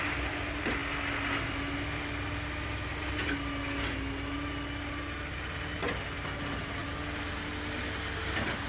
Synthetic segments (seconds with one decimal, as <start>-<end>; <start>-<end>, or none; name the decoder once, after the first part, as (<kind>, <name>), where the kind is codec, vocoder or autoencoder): none